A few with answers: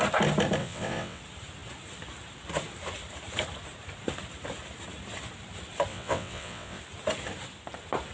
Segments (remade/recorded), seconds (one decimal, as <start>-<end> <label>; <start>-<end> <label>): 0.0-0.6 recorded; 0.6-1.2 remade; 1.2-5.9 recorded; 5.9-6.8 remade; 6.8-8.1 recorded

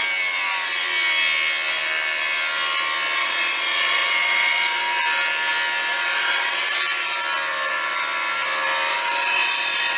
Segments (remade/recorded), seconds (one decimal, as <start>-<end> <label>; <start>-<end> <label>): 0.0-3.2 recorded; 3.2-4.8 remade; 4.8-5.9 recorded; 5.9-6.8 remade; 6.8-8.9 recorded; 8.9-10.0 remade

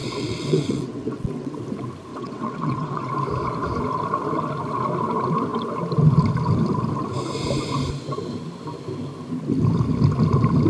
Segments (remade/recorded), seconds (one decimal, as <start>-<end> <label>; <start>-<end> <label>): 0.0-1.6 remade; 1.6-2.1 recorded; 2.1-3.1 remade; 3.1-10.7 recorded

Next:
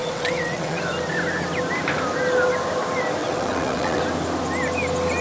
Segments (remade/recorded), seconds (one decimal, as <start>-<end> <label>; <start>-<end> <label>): 0.0-0.8 remade; 0.8-3.2 recorded; 3.2-4.0 remade; 4.0-5.2 recorded

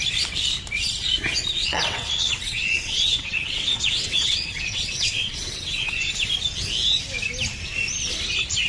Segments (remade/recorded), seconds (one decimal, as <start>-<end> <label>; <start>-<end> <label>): 0.0-1.6 recorded; 1.6-6.1 remade; 6.1-8.7 recorded

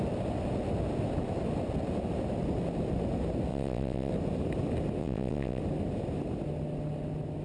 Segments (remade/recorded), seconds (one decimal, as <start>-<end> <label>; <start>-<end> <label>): 0.0-3.5 recorded; 3.5-4.1 remade; 4.1-5.0 recorded; 5.0-5.6 remade; 5.6-7.4 recorded

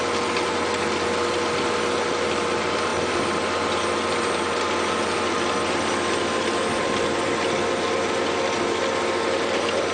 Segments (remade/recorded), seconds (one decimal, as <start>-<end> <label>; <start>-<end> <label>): 0.0-9.9 recorded